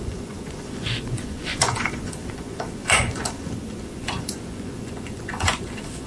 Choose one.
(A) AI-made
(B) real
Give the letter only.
A